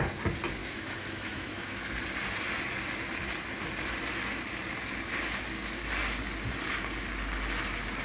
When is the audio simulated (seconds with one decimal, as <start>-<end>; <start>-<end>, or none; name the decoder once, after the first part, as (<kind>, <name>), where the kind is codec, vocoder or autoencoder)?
0.6-1.8 (autoencoder, DAC-VAE)